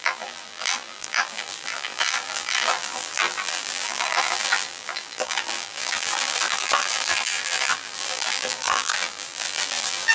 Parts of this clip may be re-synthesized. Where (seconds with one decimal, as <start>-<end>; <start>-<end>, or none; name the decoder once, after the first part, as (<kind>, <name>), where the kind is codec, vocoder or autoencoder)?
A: 0.0-10.1 (vocoder, BigVGAN v2)